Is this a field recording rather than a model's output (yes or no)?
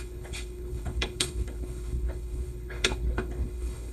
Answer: no